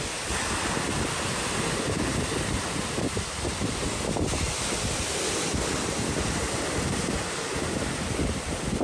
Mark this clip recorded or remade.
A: recorded